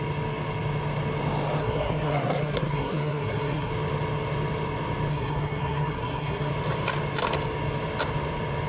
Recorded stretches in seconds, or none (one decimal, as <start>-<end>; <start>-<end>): 0.0-1.6; 3.7-5.1; 6.5-8.7